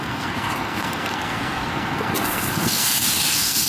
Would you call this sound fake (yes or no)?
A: yes